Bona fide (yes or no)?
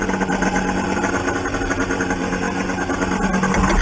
yes